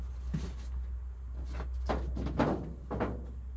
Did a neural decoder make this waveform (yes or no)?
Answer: no